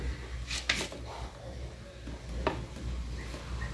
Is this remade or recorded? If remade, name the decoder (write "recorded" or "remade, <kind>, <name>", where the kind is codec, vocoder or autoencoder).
recorded